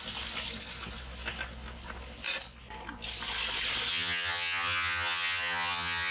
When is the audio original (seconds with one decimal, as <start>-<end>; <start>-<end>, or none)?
0.0-3.9